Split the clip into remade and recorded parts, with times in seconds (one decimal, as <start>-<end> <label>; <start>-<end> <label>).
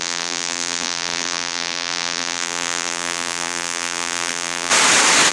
0.0-4.7 remade; 4.7-5.3 recorded